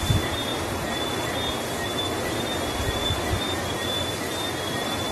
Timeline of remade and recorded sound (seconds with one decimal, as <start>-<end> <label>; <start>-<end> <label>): 0.0-5.1 recorded